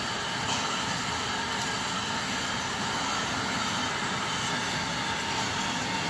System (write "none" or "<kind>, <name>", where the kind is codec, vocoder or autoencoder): none